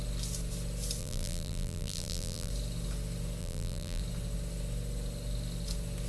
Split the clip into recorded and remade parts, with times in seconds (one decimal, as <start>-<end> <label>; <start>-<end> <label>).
0.0-1.0 recorded; 1.0-2.5 remade; 2.5-3.4 recorded; 3.4-4.0 remade; 4.0-6.1 recorded